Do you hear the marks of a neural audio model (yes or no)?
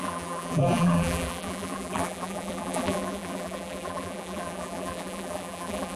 yes